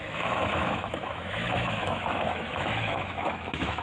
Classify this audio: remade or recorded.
remade